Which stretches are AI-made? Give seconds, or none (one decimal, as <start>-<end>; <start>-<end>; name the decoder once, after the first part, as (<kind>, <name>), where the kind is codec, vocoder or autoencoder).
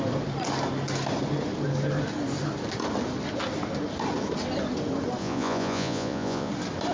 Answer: 5.2-6.5 (vocoder, Vocos)